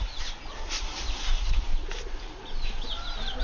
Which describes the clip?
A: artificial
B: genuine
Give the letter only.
B